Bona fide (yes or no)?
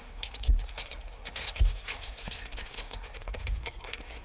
no